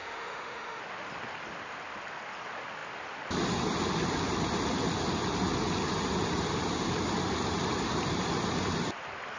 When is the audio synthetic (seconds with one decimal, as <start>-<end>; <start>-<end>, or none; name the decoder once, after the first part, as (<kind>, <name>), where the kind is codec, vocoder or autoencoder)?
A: 0.0-0.8 (autoencoder, DAC-VAE)